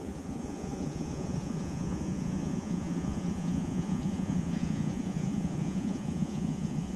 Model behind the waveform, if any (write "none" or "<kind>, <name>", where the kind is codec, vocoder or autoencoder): vocoder, Vocos